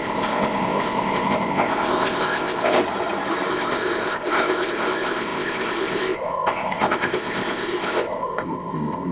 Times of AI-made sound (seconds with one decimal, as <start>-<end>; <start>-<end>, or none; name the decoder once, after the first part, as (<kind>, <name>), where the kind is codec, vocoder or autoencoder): 0.0-2.8 (codec, ZipCodec); 3.5-9.1